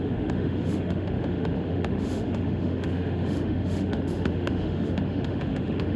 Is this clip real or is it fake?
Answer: fake